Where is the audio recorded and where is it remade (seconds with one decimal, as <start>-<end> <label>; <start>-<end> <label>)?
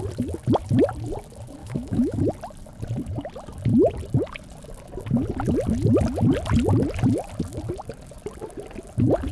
0.0-1.6 recorded; 1.6-2.2 remade; 2.2-9.3 recorded